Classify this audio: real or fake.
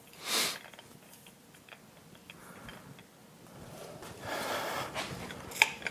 real